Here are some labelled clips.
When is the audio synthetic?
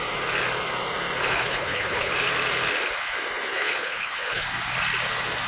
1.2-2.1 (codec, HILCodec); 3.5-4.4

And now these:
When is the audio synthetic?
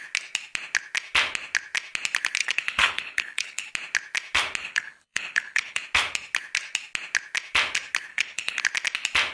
2.4-3.7 (codec, HILCodec); 4.6-5.8; 8.1-8.6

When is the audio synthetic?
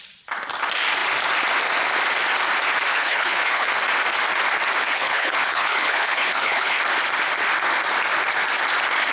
2.9-3.7 (codec, HILCodec); 4.8-6.8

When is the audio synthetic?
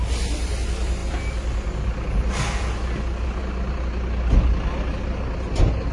none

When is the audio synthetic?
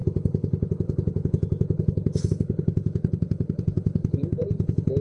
0.0-5.0 (codec, HILCodec)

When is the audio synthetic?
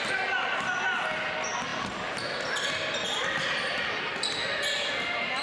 none